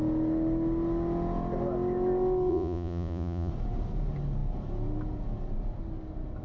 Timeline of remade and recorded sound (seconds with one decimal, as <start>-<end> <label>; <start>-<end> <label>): 0.0-2.5 recorded; 2.5-3.5 remade; 3.5-6.4 recorded